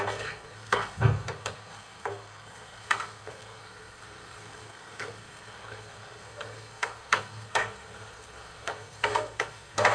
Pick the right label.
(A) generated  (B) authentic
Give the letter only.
A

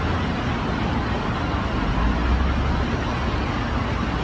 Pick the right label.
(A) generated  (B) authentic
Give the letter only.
B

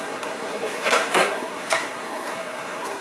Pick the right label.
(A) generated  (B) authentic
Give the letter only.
A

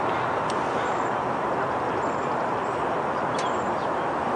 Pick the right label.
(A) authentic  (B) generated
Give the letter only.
A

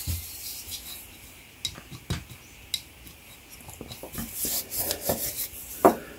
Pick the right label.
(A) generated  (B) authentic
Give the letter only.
B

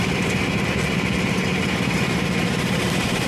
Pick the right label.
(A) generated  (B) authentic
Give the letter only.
B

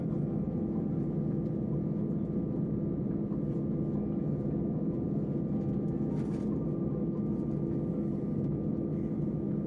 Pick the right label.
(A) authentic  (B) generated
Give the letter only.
A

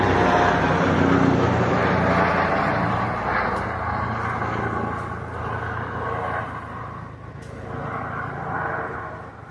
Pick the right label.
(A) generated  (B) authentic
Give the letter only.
B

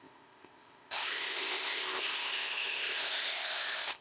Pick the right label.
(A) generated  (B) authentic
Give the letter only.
A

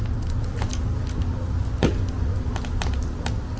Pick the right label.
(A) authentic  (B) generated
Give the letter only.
A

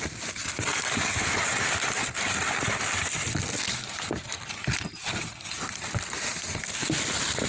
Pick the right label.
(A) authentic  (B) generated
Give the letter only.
A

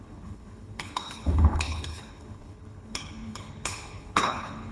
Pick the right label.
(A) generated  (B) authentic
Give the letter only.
A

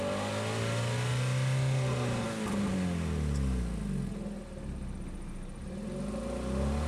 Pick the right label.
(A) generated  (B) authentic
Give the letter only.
B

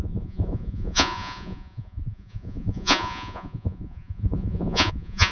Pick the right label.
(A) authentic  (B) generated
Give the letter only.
B